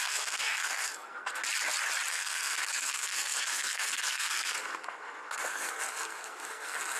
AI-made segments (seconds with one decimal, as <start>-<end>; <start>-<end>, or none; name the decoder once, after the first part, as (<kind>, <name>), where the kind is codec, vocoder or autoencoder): 0.0-1.4 (codec, SNAC); 2.1-7.0